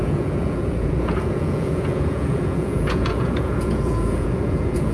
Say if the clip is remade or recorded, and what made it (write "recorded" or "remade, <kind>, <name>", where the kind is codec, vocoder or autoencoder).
remade, vocoder, Vocos